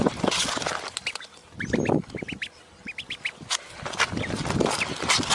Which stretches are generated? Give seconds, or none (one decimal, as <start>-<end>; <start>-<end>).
none